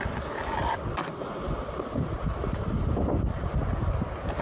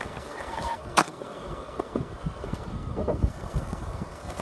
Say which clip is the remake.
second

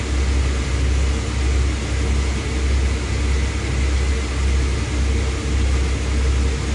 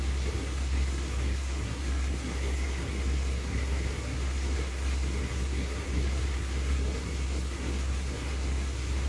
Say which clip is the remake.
second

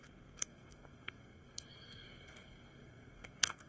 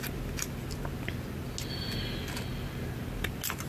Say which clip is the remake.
first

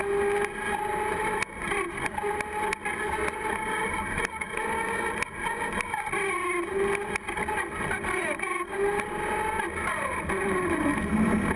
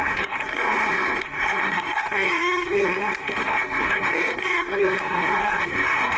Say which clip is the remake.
second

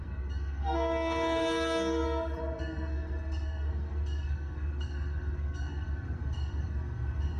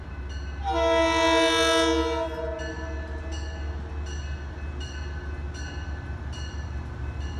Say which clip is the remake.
first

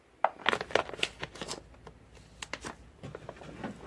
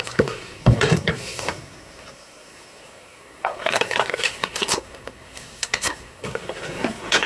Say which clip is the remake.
second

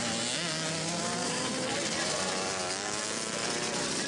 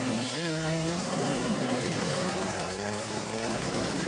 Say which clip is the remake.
second